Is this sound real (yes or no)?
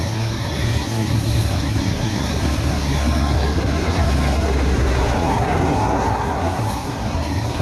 no